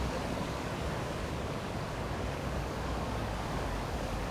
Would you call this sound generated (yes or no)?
yes